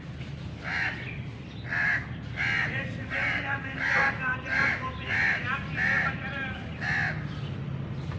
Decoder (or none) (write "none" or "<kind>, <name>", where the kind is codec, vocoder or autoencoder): none